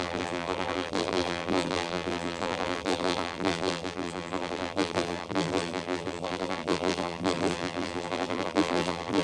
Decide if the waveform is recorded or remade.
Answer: remade